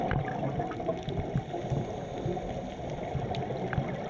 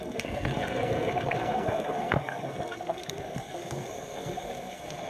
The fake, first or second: second